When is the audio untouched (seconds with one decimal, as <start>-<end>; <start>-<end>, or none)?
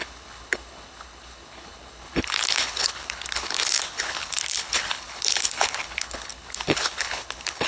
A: none